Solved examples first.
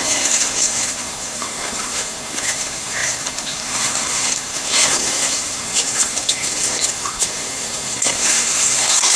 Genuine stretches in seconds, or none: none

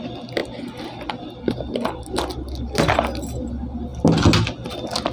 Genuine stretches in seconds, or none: 0.0-5.1

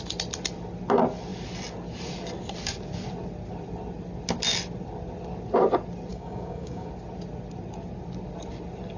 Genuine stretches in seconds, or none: 0.0-6.1; 6.9-9.0